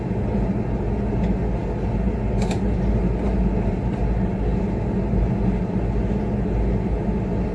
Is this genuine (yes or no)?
yes